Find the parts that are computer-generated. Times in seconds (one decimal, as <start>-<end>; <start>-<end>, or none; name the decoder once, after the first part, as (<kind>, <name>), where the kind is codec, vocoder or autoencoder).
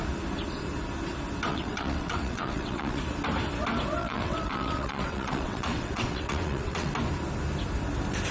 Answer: 1.5-3.0 (vocoder, WaveNeXt); 4.0-6.9